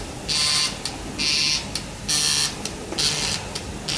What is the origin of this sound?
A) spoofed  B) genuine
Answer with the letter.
B